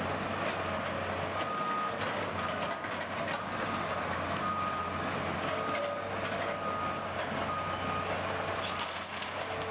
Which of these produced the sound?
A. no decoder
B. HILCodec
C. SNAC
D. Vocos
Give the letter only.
A